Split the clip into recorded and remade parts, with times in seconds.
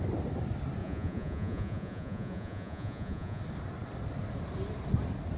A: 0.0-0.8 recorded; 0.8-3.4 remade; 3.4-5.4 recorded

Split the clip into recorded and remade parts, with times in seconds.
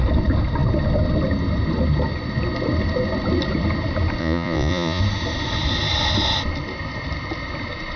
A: 0.0-4.2 recorded; 4.2-5.0 remade; 5.0-8.0 recorded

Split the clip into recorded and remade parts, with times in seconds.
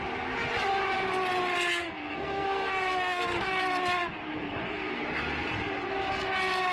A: 0.0-1.8 recorded; 1.8-3.2 remade; 3.2-4.4 recorded; 4.4-5.0 remade; 5.0-6.7 recorded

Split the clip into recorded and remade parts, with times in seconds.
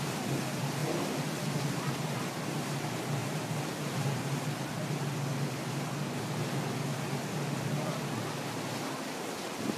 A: 0.0-9.8 recorded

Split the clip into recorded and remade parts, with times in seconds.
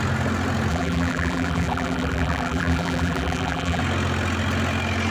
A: 0.0-0.7 recorded; 0.7-3.8 remade; 3.8-5.1 recorded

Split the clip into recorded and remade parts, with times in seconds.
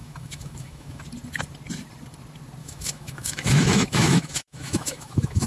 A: 0.0-1.0 remade; 1.0-2.6 recorded; 2.6-5.5 remade